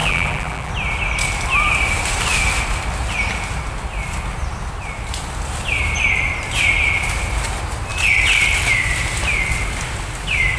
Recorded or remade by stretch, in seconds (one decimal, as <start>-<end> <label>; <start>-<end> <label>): 0.0-0.7 remade; 0.7-10.6 recorded